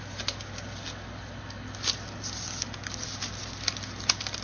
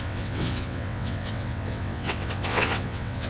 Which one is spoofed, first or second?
second